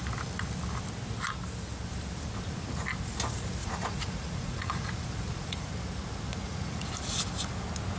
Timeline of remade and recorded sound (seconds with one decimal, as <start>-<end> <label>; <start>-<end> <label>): 0.0-3.6 recorded; 3.6-5.7 remade; 5.7-6.4 recorded; 6.4-6.9 remade; 6.9-8.0 recorded